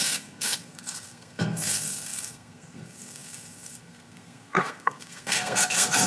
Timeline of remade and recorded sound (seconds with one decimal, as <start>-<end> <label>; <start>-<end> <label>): 0.0-6.1 remade

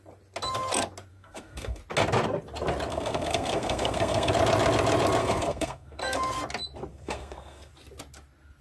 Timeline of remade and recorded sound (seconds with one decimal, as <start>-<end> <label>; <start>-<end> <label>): 0.0-1.1 recorded; 1.1-1.8 remade; 1.8-2.9 recorded; 2.9-4.3 remade; 4.3-5.2 recorded; 5.2-6.0 remade; 6.0-6.9 recorded; 6.9-7.7 remade; 7.7-8.6 recorded

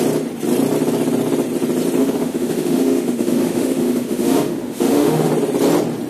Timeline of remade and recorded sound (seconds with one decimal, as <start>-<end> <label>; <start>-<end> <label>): 0.0-2.0 recorded; 2.0-5.3 remade; 5.3-6.1 recorded